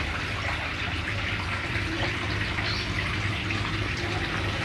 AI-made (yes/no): no